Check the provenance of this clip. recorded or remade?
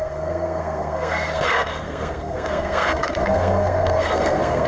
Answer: remade